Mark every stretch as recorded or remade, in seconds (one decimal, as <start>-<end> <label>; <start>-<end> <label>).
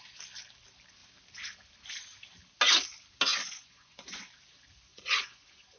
0.0-3.3 recorded; 3.3-4.2 remade; 4.2-4.9 recorded; 4.9-5.8 remade